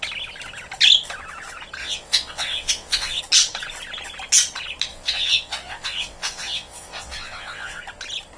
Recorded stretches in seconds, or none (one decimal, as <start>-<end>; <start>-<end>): 0.0-1.8; 3.2-4.9; 7.8-8.4